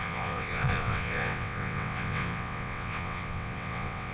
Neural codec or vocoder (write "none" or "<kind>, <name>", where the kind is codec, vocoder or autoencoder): vocoder, WaveNeXt